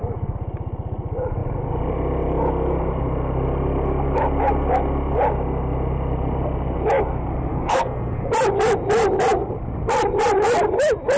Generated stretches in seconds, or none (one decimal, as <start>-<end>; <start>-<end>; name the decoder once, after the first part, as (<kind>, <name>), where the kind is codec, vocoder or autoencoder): 7.5-8.3 (codec, SNAC)